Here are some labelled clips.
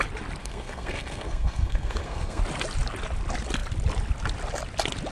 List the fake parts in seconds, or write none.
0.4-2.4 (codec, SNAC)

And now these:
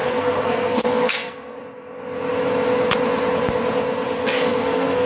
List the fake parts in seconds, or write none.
0.0-1.6 (codec, SNAC); 4.2-5.1

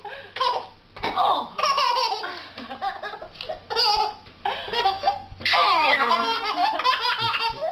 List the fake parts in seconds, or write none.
4.7-6.5 (codec, SNAC)

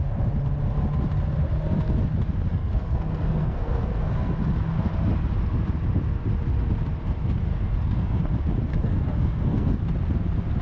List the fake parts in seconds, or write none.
2.5-4.3 (codec, SNAC); 7.5-8.2; 8.7-9.8

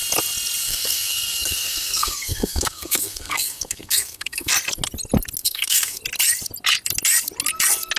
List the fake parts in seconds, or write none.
0.6-4.5 (codec, SNAC); 5.4-6.0

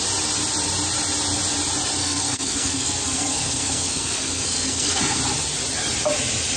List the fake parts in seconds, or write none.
2.0-5.2 (codec, SNAC)